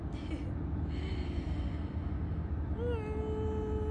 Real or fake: real